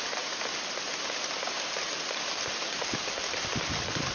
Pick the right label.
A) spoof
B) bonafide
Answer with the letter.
B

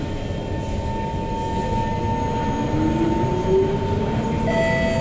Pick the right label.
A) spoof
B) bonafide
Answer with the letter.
B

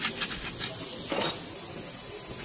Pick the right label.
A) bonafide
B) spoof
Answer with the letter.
A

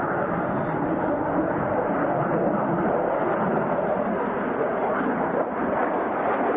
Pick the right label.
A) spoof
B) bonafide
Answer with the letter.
B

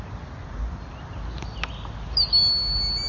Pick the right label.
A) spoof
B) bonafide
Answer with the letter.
B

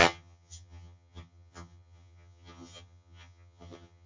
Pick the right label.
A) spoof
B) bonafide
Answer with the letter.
A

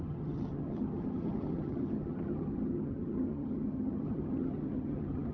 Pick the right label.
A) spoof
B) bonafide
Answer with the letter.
A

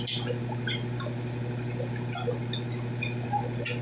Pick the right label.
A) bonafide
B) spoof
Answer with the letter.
A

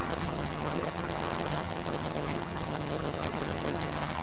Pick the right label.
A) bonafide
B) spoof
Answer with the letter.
B